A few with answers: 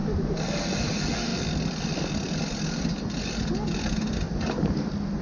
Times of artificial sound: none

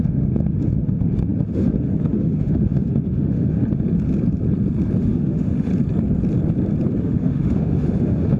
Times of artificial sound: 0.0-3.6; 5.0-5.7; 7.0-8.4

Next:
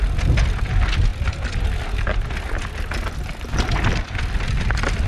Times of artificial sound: none